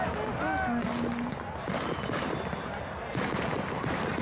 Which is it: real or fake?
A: real